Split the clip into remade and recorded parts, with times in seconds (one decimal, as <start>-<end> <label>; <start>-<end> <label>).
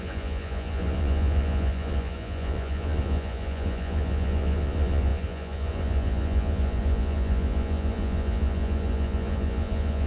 0.0-10.1 remade